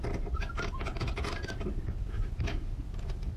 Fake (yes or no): no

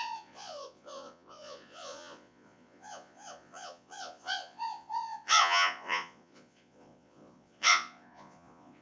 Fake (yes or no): yes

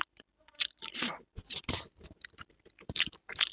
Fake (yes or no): yes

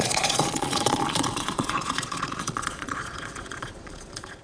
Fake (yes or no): yes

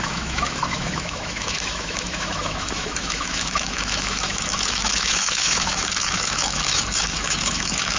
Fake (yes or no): yes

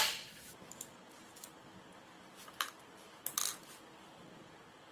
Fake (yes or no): no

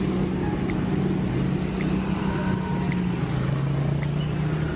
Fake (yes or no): no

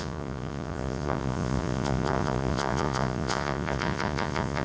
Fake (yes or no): yes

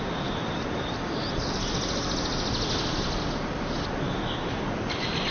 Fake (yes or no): no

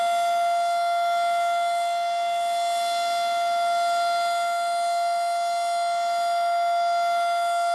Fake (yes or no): no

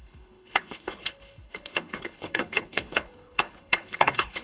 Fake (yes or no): yes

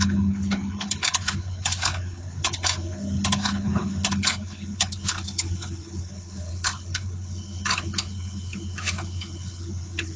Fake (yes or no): yes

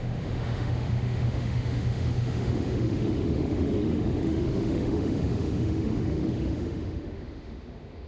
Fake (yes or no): yes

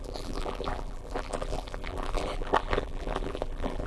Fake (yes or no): yes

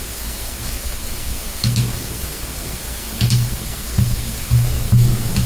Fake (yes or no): yes